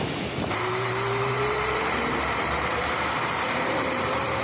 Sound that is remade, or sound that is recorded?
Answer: remade